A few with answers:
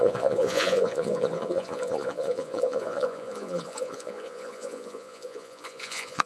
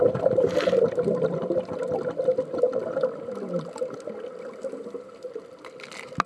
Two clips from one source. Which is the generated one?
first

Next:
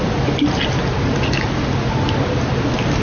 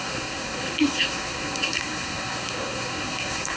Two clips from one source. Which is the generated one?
second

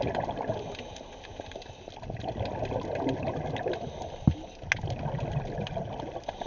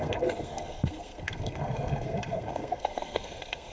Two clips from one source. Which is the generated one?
second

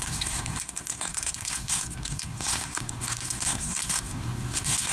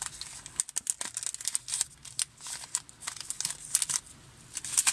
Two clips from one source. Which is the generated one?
first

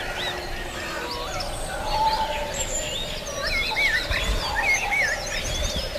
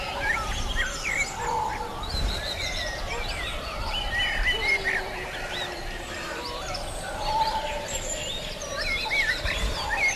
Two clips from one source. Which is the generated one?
second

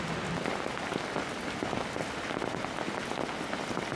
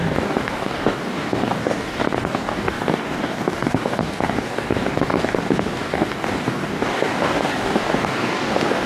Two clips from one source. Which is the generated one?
second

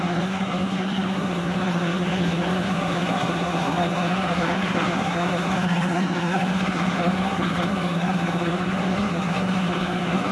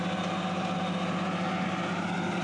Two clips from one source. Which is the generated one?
first